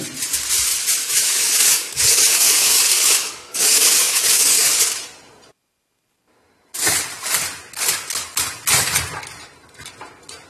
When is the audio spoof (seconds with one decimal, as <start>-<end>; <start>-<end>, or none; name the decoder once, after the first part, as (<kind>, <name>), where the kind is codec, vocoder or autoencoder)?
1.0-4.8 (codec, DAC)